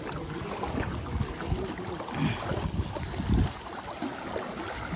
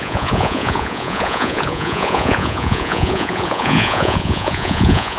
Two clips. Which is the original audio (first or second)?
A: first